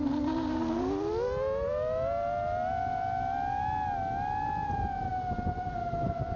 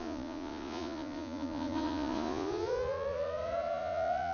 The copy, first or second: second